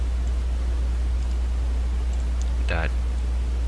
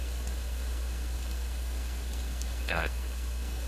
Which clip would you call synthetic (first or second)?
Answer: second